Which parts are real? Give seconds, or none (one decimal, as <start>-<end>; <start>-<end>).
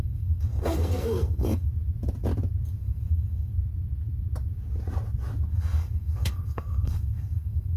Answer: 1.7-2.8; 3.5-5.5